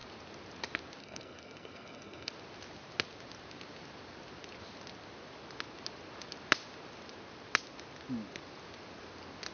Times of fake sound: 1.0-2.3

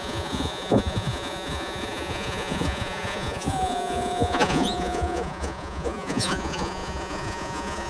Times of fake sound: 0.0-7.9

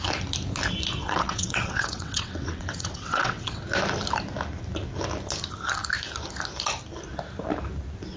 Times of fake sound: 1.0-3.6